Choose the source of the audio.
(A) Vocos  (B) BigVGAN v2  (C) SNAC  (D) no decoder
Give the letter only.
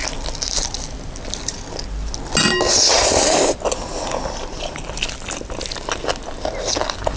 D